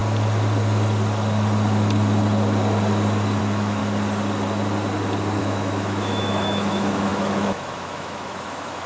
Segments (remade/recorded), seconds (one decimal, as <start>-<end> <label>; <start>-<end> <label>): 0.0-3.4 recorded; 3.4-3.8 remade; 3.8-5.4 recorded; 5.4-8.9 remade